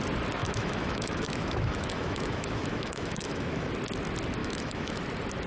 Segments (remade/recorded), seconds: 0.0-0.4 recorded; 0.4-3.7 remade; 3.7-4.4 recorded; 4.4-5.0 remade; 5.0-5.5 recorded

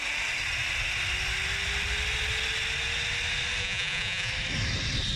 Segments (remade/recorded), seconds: 0.0-3.6 recorded; 3.6-4.3 remade; 4.3-5.2 recorded

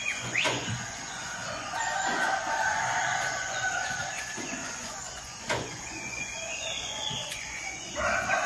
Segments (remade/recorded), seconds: 0.0-8.5 remade

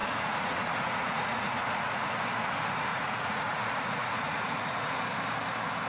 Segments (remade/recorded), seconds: 0.0-2.2 remade; 2.2-2.9 recorded; 2.9-5.0 remade; 5.0-5.9 recorded

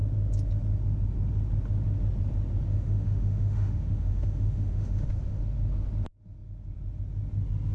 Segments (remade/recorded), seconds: 0.0-2.7 recorded; 2.7-5.4 remade; 5.4-7.7 recorded

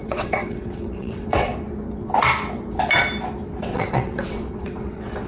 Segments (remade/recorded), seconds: 0.0-1.5 remade; 1.5-3.6 recorded; 3.6-5.3 remade

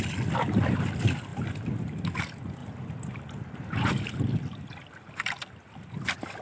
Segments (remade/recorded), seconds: 0.0-2.6 recorded; 2.6-3.9 remade; 3.9-6.4 recorded

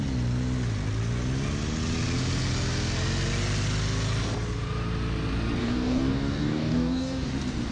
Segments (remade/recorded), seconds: 0.0-5.6 recorded; 5.6-7.3 remade; 7.3-7.7 recorded